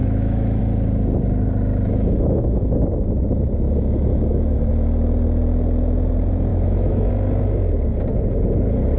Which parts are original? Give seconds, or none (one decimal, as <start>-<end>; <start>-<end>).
0.6-1.7; 4.7-6.5; 7.1-9.0